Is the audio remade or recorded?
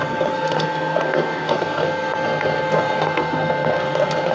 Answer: remade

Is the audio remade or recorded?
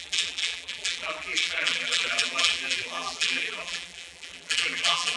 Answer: remade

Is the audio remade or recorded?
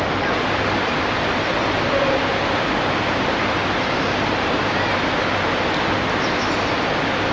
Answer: recorded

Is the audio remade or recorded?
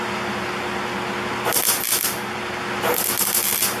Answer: recorded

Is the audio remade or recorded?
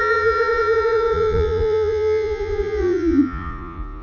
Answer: remade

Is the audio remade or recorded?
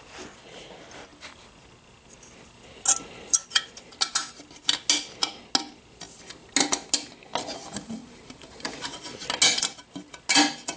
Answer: recorded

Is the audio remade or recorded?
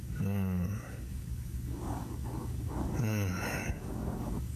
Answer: remade